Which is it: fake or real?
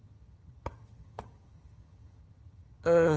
fake